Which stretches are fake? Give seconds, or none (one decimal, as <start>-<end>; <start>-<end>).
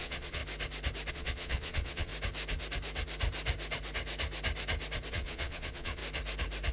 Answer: 0.0-0.4; 1.1-2.1; 5.1-6.0